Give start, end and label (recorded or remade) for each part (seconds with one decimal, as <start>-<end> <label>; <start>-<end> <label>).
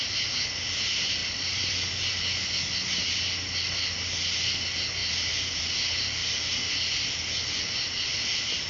0.0-1.2 recorded; 1.2-1.7 remade; 1.7-5.0 recorded; 5.0-5.7 remade; 5.7-8.7 recorded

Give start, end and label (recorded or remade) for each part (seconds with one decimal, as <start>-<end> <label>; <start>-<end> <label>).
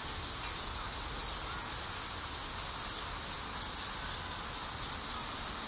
0.0-5.7 recorded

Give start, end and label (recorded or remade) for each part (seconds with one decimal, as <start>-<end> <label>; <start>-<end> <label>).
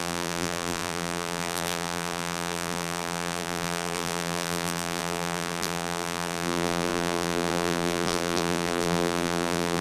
0.0-9.8 remade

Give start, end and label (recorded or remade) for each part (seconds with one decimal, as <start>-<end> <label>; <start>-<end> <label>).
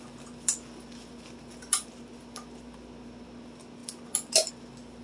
0.0-5.0 recorded